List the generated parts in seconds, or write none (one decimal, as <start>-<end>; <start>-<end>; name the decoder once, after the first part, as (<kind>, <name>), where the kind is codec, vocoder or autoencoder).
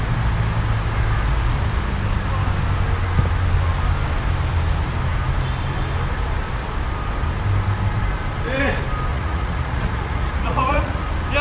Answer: 9.1-11.0 (vocoder, Vocos)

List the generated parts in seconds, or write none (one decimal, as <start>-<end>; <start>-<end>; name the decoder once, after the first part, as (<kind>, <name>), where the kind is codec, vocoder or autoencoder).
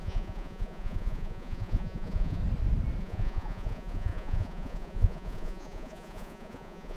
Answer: 0.0-2.4 (vocoder, Vocos); 3.0-7.0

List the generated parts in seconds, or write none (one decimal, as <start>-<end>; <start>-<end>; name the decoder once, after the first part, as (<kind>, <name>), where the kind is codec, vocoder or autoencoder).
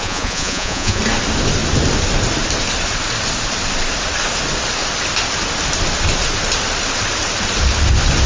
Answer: 0.0-1.0 (vocoder, Vocos)